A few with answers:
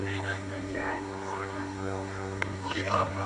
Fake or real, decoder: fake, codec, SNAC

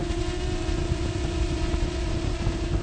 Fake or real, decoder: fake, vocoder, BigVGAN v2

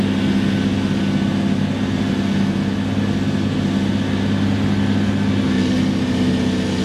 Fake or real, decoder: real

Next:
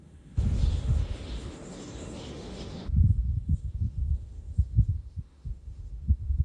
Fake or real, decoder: fake, autoencoder, DAC-VAE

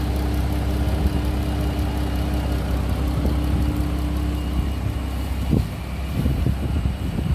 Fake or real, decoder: real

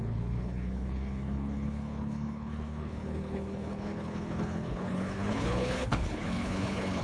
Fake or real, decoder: fake, codec, HILCodec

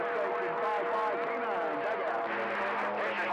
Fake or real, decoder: real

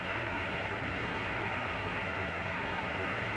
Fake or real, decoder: fake, codec, SNAC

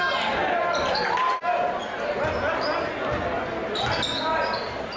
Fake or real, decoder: real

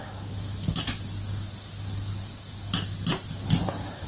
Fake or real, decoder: real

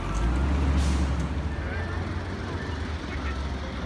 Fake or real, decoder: real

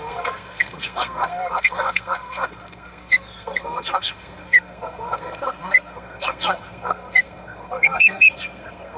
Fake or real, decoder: fake, codec, SNAC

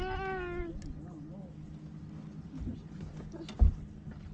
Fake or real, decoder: real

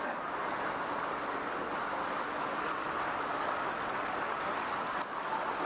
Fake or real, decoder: real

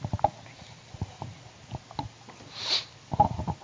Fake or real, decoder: real